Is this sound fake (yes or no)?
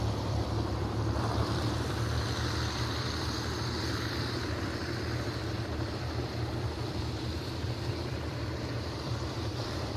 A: yes